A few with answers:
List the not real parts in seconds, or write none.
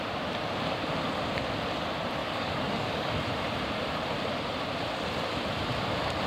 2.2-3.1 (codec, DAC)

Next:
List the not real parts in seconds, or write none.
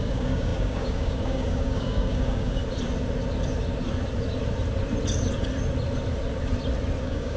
0.0-2.6 (codec, DAC); 7.0-7.4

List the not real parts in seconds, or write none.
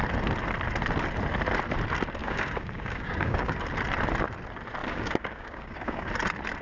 2.2-3.6 (codec, DAC); 4.8-6.1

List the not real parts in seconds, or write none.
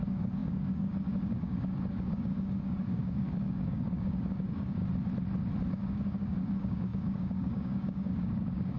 0.0-4.8 (codec, DAC); 5.7-8.8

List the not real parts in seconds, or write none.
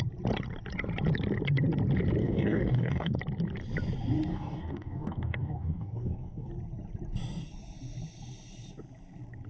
2.2-3.2 (codec, DAC); 4.3-6.5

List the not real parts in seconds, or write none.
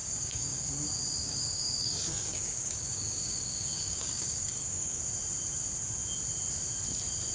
0.0-0.7 (codec, DAC); 1.2-5.0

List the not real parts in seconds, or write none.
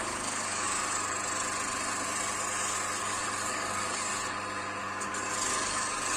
0.0-0.8 (codec, DAC); 3.0-4.1; 4.8-6.2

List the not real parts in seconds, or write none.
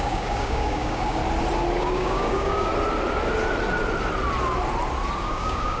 0.0-1.2 (codec, DAC); 1.8-2.7; 5.2-5.8